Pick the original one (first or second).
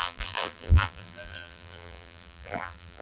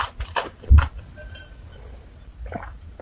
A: second